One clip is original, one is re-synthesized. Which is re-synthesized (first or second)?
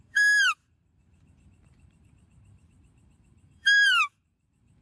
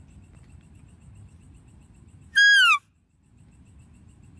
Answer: first